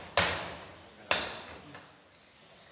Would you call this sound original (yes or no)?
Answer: yes